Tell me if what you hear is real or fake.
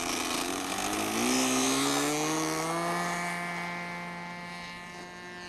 real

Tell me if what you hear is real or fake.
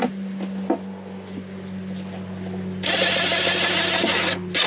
real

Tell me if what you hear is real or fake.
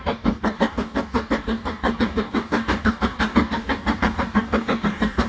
fake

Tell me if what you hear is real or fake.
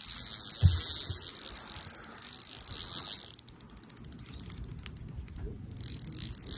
real